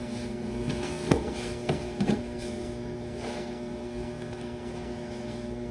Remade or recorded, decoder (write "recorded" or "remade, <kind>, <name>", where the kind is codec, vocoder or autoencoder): remade, codec, SNAC